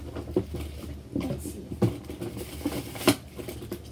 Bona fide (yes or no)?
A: yes